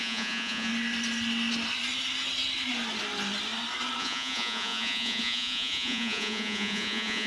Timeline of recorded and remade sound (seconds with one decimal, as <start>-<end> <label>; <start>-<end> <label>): 0.0-0.7 remade; 0.7-4.0 recorded; 4.0-7.3 remade